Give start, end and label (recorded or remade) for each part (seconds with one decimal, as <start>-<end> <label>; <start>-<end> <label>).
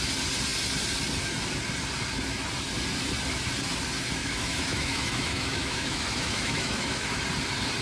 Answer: 0.0-4.2 recorded; 4.2-7.2 remade; 7.2-7.8 recorded